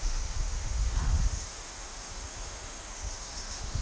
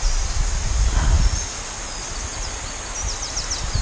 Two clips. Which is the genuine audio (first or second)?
second